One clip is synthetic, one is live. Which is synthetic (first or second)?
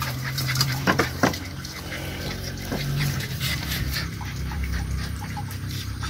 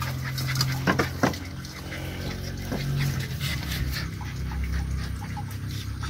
first